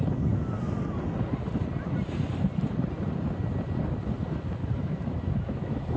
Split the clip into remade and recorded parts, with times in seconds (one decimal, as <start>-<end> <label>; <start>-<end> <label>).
0.0-4.6 recorded; 4.6-6.0 remade